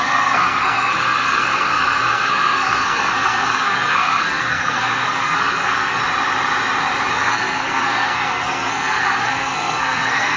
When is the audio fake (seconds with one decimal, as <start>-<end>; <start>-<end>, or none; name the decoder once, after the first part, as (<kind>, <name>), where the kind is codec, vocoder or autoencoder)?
0.0-6.0 (codec, SNAC); 7.1-10.4